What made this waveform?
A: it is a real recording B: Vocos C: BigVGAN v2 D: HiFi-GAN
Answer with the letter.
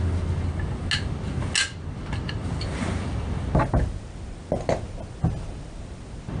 A